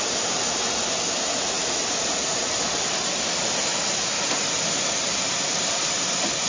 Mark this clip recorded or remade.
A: recorded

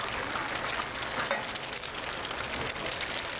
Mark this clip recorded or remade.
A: recorded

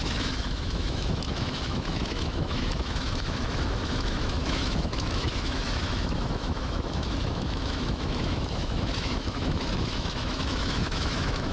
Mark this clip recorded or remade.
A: remade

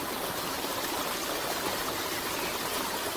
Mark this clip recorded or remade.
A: remade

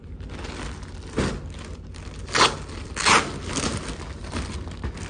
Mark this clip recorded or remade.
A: recorded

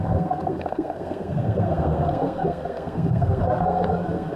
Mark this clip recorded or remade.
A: remade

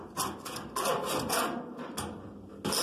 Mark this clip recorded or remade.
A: recorded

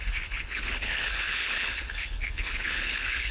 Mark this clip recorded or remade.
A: remade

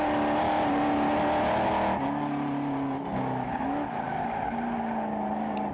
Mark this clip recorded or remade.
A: recorded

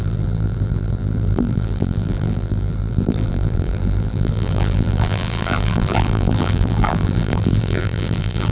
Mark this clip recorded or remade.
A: remade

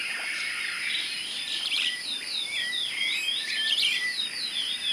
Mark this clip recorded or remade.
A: remade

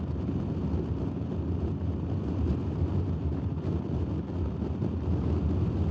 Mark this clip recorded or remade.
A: recorded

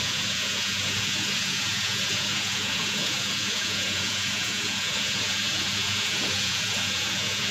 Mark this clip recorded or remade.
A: remade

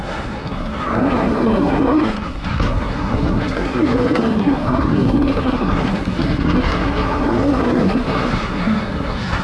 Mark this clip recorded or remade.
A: remade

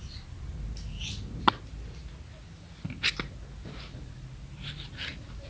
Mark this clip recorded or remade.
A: recorded